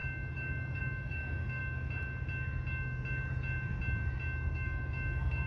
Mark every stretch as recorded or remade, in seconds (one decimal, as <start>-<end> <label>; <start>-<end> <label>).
0.0-1.6 remade; 1.6-4.5 recorded; 4.5-5.5 remade